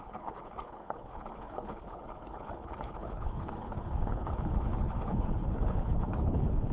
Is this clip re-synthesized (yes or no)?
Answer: yes